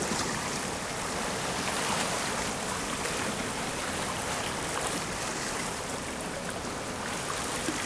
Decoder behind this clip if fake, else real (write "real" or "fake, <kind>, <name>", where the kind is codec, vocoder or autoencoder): real